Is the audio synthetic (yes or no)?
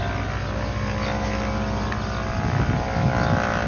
no